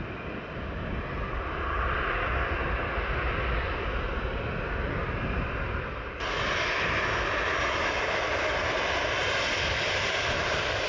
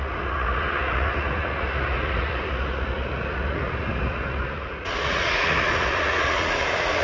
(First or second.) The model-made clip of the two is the second